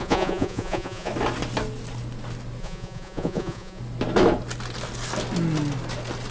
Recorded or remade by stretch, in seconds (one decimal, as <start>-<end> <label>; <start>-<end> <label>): 0.0-1.1 remade; 1.1-2.6 recorded; 2.6-3.8 remade; 3.8-6.3 recorded